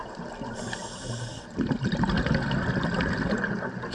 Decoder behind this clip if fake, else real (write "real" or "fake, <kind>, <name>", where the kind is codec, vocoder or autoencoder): real